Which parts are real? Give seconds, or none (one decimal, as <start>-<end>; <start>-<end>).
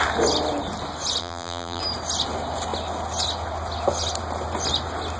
0.0-1.2; 1.8-5.2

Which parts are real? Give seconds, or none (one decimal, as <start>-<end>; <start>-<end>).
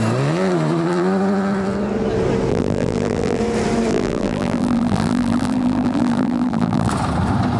0.0-2.5; 3.4-3.9; 6.9-7.6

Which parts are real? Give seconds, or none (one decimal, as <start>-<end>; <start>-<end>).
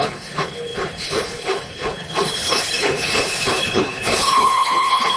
none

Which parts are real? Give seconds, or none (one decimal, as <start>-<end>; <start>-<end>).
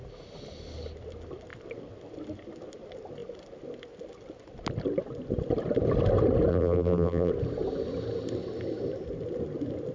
0.0-6.5; 7.3-9.9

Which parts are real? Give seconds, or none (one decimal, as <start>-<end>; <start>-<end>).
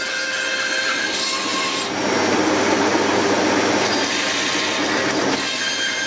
0.0-6.1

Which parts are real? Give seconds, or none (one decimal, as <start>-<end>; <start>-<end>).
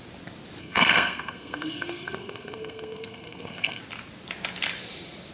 0.0-0.6; 3.8-5.3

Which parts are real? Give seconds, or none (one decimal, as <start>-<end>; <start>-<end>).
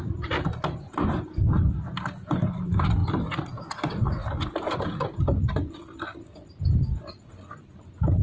3.0-4.6; 6.1-8.2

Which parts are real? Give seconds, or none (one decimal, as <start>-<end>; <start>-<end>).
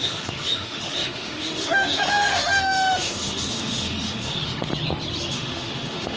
4.7-5.3